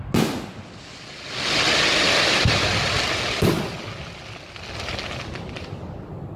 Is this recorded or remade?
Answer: recorded